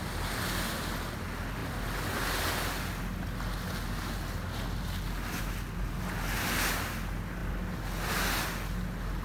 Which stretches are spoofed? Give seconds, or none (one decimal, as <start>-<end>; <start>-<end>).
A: none